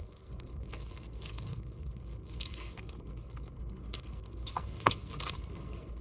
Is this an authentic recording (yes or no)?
no